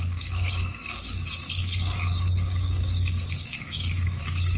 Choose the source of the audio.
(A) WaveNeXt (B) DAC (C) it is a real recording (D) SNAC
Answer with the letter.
B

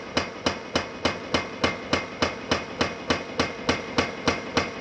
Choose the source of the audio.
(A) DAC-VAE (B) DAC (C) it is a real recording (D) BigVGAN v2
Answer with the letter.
C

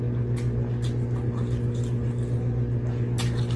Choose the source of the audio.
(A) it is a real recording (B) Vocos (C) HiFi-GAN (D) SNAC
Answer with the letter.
A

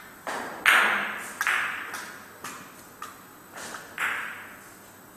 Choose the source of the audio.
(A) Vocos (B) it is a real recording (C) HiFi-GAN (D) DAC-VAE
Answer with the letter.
B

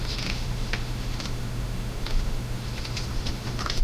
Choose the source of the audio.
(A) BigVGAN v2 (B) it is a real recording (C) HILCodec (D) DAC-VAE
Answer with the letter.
D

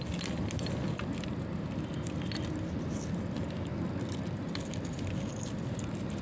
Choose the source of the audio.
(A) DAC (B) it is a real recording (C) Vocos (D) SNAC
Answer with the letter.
B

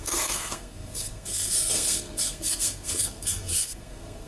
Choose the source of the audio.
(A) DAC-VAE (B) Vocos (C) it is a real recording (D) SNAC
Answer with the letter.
D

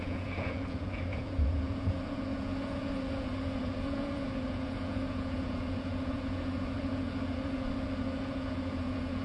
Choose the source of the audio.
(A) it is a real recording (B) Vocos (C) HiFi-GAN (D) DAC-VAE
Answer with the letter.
B